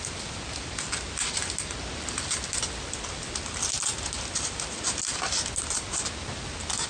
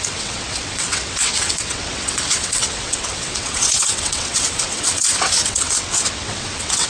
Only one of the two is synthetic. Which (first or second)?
second